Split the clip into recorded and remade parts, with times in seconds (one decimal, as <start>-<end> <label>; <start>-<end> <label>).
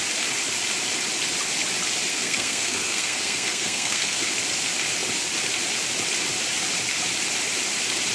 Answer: 0.0-2.1 recorded; 2.1-4.3 remade; 4.3-8.1 recorded